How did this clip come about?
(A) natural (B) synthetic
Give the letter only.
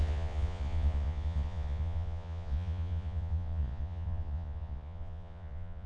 B